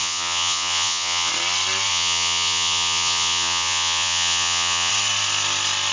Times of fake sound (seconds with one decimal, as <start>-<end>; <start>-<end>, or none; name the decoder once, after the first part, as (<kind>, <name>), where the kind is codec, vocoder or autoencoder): 0.0-1.3 (vocoder, Vocos); 1.9-4.9